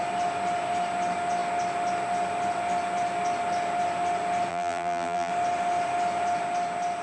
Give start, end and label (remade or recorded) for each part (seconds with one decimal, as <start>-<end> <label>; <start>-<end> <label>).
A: 0.0-4.5 recorded; 4.5-5.3 remade; 5.3-7.0 recorded